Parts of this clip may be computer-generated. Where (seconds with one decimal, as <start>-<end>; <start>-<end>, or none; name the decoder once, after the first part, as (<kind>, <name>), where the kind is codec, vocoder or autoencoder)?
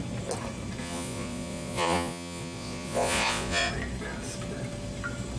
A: 0.8-3.7 (vocoder, Vocos)